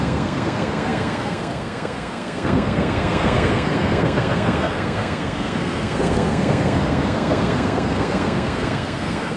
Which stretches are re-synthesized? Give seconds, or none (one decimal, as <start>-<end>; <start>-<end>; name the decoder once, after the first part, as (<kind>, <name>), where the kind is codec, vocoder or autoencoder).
0.0-9.4 (codec, SNAC)